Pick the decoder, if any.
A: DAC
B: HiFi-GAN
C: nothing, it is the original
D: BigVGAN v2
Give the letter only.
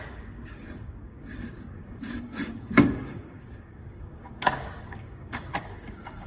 A